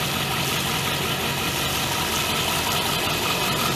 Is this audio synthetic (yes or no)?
no